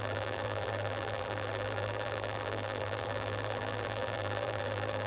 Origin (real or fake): fake